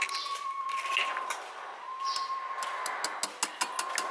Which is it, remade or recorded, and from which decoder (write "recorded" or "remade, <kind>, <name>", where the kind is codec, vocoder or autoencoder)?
recorded